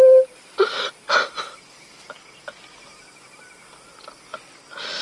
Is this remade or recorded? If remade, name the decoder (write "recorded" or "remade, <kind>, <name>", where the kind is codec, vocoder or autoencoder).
recorded